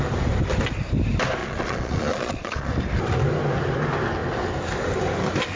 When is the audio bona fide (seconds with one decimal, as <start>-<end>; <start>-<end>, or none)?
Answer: 0.0-1.4; 2.7-5.6